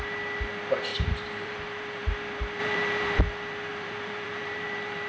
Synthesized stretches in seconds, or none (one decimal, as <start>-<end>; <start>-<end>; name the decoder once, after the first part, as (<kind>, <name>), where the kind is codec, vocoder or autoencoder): 0.9-2.1 (vocoder, BigVGAN v2); 2.6-3.2; 3.7-5.1